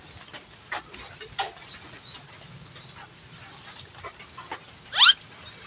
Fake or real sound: real